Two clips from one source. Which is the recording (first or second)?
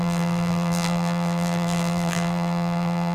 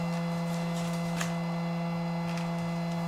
second